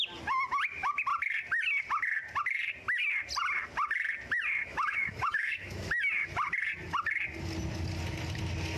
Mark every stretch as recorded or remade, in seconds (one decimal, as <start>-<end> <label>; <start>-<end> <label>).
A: 0.0-4.6 recorded; 4.6-5.9 remade; 5.9-8.8 recorded